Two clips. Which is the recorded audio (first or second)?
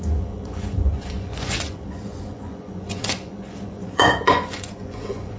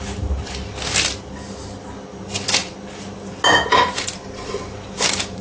second